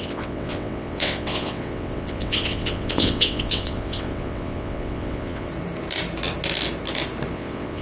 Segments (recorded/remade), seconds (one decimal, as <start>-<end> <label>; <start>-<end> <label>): 0.0-5.5 remade; 5.5-7.3 recorded; 7.3-7.8 remade